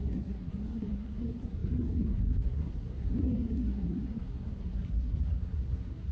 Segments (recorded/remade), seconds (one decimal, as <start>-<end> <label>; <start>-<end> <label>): 0.0-6.1 remade